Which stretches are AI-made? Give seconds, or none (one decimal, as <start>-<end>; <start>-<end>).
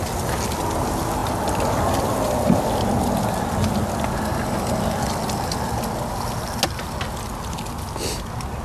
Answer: none